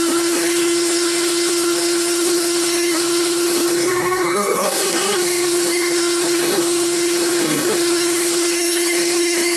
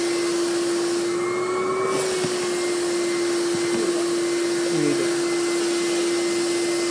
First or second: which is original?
second